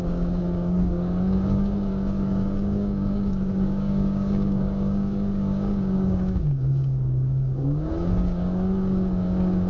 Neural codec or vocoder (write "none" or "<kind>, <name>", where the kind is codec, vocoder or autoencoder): codec, DAC